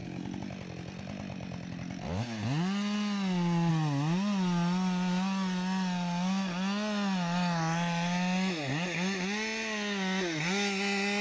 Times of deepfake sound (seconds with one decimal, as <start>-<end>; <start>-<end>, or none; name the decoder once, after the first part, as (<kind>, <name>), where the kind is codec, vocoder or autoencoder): none